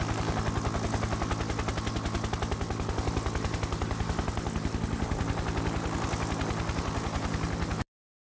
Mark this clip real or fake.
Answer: real